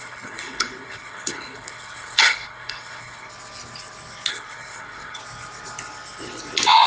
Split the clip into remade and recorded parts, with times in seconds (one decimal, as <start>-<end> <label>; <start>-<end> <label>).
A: 0.0-3.3 remade; 3.3-4.3 recorded; 4.3-5.2 remade; 5.2-6.9 recorded